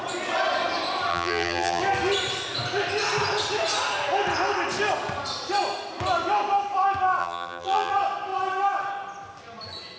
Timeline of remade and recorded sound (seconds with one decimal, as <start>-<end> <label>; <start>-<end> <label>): 0.0-1.1 recorded; 1.1-1.8 remade; 1.8-7.2 recorded; 7.2-7.9 remade; 7.9-10.0 recorded